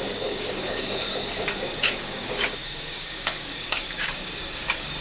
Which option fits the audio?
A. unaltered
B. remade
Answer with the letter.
B